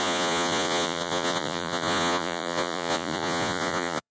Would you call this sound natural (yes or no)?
no